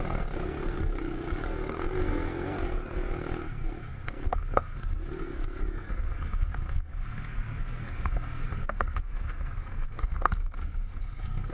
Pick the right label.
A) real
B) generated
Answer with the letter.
B